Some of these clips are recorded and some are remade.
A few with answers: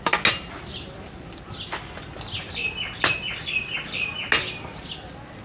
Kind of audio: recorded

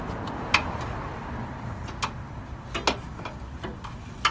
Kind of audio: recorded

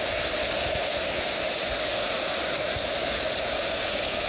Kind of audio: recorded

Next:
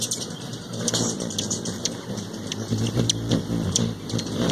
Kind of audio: remade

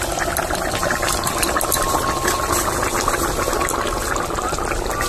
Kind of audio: recorded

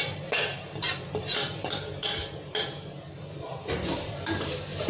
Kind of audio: remade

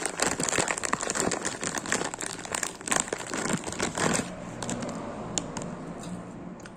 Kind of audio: recorded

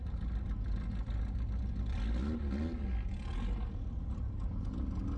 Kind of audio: recorded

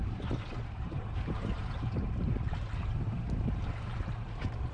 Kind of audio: remade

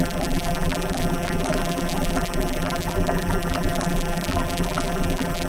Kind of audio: remade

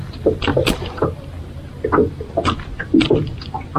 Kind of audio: remade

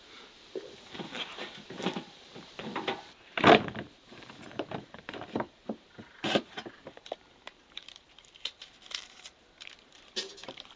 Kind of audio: remade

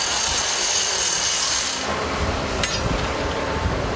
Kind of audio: recorded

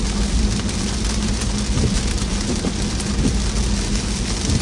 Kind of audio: recorded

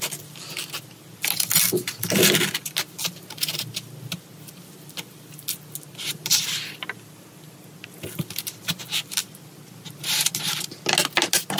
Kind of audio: recorded